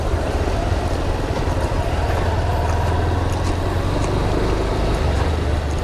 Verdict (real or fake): real